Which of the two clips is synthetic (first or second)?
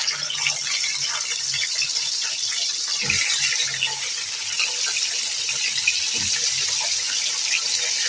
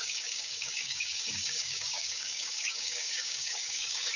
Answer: second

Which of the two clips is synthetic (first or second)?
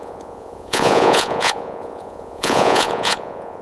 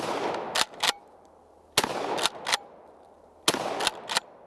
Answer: first